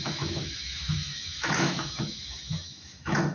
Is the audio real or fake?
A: fake